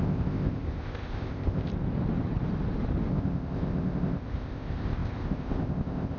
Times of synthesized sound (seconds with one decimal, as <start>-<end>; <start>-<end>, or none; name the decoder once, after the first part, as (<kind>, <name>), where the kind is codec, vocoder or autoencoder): 0.0-1.7 (codec, ZipCodec); 3.1-6.2